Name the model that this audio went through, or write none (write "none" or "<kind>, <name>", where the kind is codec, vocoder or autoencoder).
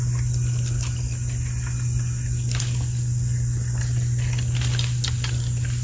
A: none